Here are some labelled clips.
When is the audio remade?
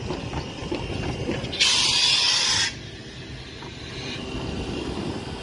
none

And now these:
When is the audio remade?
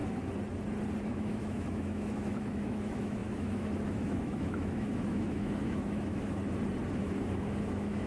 1.0-6.4 (autoencoder, DAC-VAE); 7.0-8.1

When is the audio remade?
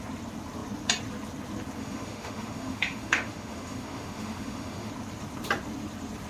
1.8-4.9 (autoencoder, DAC-VAE)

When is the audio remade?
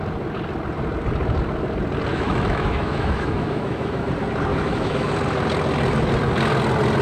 2.1-4.1 (autoencoder, DAC-VAE); 4.5-5.1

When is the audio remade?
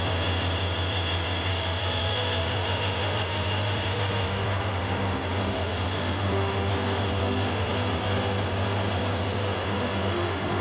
1.5-6.7 (autoencoder, DAC-VAE); 7.2-7.7; 9.6-10.6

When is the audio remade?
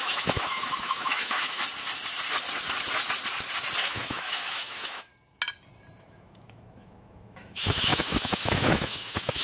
0.0-1.6 (autoencoder, DAC-VAE); 3.8-5.1; 6.0-9.4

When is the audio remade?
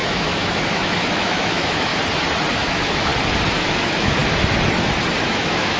0.0-1.9 (autoencoder, DAC-VAE); 2.5-3.1; 3.6-4.2; 5.2-5.8